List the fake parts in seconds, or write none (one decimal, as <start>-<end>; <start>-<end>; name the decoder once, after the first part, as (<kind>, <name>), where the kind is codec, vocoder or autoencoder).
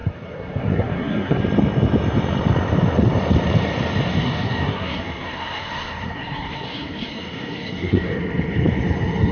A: 0.0-1.4 (codec, SNAC); 4.1-8.2